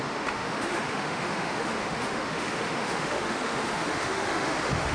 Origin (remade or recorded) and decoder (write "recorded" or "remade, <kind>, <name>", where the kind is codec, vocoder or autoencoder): remade, autoencoder, DAC-VAE